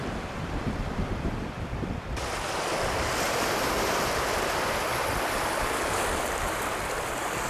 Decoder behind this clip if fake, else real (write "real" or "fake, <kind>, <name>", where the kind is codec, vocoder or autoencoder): fake, vocoder, BigVGAN v2